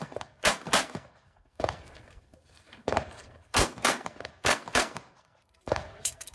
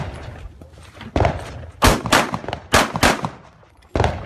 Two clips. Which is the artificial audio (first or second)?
first